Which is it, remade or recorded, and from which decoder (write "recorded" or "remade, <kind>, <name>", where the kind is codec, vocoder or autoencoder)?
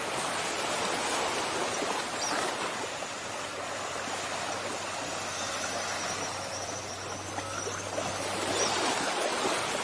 recorded